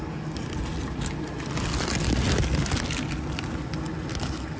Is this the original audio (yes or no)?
yes